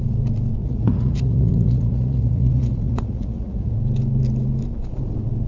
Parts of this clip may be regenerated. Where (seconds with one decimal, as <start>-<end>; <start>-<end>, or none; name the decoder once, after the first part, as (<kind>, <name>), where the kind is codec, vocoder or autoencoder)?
0.6-3.7 (vocoder, Vocos)